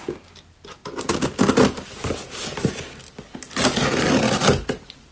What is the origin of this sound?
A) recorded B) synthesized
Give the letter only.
A